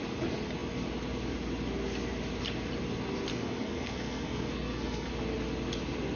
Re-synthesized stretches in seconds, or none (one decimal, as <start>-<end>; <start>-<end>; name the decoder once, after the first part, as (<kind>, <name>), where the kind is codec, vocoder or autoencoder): 3.3-5.1 (codec, SNAC)